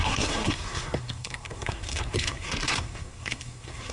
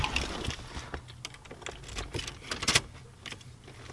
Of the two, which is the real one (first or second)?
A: second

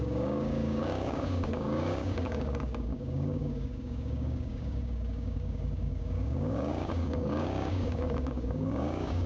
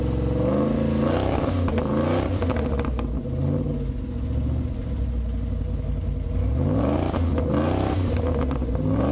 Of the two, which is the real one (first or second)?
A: second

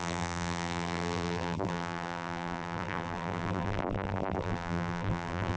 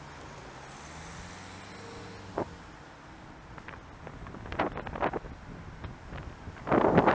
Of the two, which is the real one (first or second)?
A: second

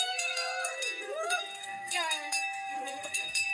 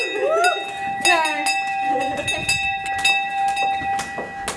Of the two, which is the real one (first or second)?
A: second